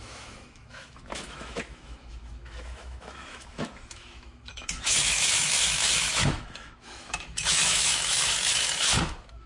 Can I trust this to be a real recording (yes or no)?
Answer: no